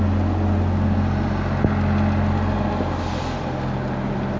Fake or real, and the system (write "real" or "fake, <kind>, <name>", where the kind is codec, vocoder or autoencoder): real